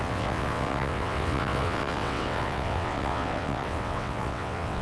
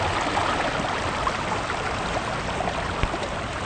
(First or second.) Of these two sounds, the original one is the second